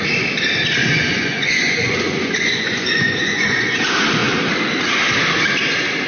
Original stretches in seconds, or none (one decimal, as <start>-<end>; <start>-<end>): 0.0-0.8; 3.8-6.1